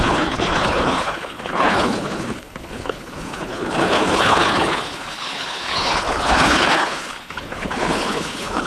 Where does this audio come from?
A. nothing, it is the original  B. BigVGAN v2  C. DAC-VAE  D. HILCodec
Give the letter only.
D